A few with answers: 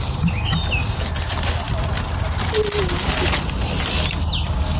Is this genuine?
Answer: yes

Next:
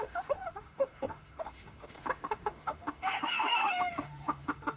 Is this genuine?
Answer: no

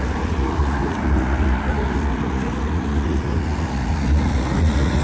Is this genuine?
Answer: no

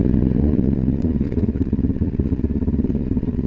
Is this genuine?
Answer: no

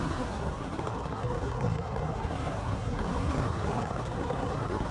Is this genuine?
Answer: no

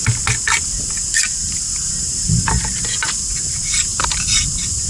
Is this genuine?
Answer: yes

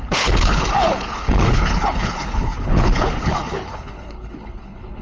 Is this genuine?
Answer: no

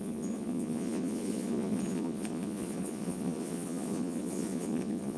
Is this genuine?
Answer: no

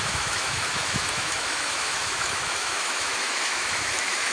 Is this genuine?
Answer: no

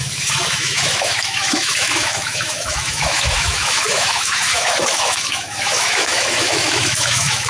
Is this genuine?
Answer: no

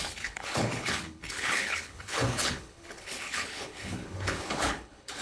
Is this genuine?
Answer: no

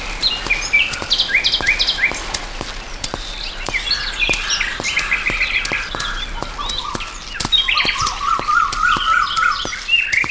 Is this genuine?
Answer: yes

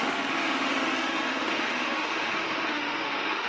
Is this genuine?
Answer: no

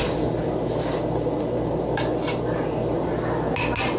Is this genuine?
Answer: yes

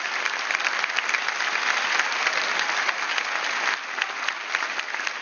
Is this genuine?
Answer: yes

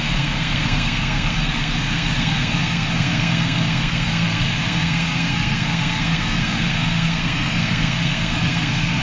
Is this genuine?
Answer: no